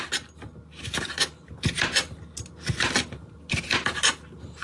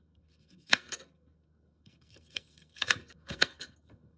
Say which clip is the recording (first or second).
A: first